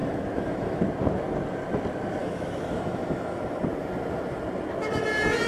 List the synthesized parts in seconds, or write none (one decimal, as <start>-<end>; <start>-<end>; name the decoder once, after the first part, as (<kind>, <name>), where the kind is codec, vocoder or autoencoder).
0.0-0.8 (autoencoder, DAC-VAE); 2.2-3.6